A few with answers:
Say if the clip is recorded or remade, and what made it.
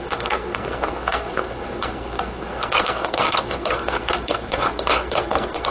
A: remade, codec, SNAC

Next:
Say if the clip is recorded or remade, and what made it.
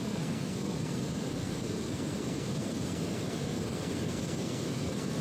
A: remade, codec, SNAC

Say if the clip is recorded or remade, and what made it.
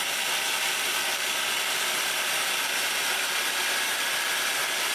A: recorded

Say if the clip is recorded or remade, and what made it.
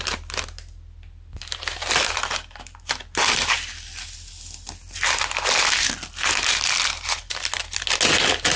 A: recorded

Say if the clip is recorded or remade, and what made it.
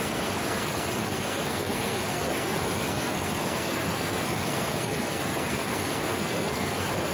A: remade, codec, SNAC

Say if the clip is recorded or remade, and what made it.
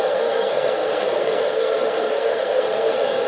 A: remade, codec, SNAC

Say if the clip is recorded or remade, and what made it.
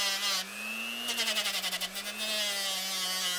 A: recorded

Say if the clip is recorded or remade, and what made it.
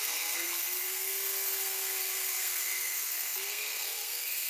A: remade, codec, SNAC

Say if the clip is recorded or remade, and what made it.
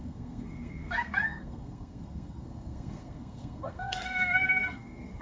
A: remade, codec, SNAC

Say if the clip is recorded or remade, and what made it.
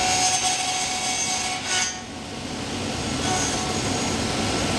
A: recorded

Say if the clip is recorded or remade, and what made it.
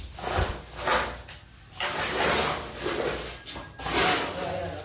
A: recorded